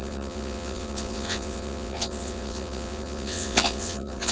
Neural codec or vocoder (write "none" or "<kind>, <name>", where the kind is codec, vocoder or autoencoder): vocoder, WaveNeXt